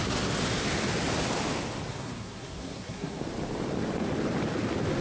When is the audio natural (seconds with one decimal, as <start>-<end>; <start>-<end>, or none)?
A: 0.0-1.9; 3.2-5.0